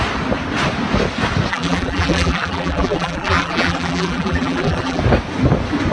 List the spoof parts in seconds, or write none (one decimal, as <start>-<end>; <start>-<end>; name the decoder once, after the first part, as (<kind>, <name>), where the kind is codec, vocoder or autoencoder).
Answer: 1.5-5.0 (vocoder, BigVGAN v2)